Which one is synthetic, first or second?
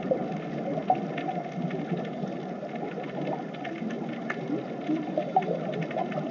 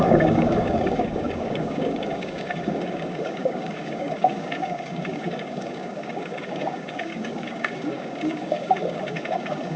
second